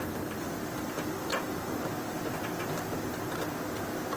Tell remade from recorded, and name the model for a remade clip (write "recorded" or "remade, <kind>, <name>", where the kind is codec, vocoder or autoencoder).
recorded